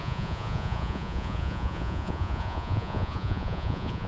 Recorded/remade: remade